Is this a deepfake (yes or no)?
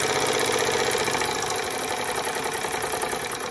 no